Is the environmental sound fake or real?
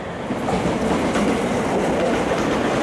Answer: real